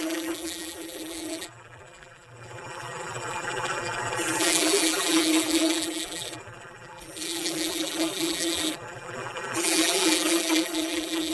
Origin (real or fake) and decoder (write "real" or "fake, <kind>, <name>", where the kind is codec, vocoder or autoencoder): fake, vocoder, BigVGAN v2